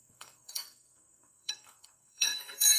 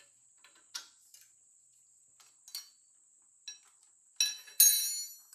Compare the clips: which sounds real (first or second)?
second